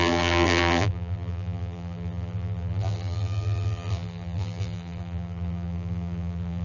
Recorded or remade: remade